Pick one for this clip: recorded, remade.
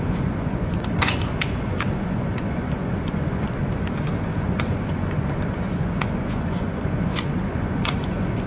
remade